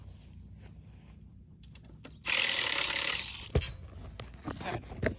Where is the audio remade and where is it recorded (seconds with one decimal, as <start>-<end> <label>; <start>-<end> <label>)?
0.0-5.2 recorded